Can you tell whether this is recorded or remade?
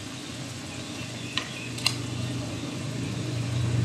remade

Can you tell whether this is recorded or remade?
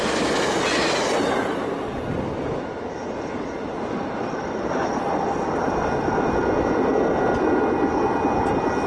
recorded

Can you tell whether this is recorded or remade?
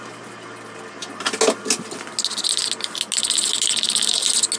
recorded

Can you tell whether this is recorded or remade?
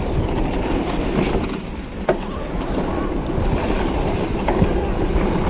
recorded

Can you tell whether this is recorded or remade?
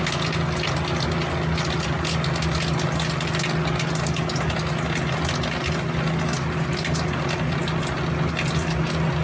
recorded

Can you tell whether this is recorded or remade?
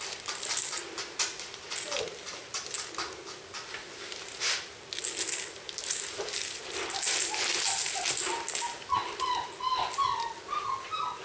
recorded